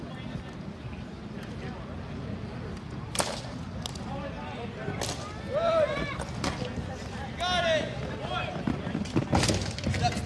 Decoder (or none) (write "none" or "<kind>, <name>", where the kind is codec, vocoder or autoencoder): none